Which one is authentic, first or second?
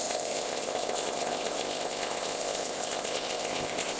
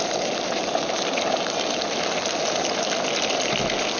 second